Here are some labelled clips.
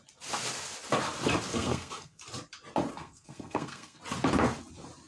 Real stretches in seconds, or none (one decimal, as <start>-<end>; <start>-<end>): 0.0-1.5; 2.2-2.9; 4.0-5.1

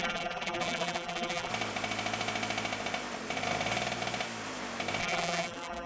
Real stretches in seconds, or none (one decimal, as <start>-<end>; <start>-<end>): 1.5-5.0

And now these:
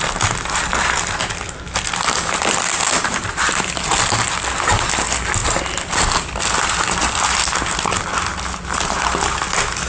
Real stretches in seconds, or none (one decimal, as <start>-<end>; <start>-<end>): 0.0-9.9

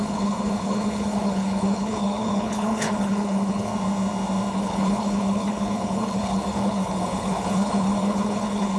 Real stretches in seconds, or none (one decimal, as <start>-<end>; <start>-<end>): 3.7-4.5

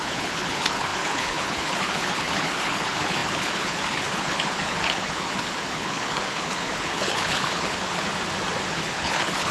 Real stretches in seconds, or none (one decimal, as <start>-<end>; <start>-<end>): 8.1-8.7